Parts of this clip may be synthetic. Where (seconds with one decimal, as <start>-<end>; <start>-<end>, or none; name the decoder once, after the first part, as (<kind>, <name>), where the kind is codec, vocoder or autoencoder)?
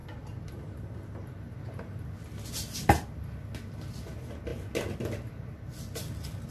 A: none